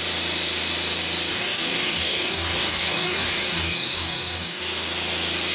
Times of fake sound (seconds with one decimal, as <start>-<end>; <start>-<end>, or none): 1.3-4.6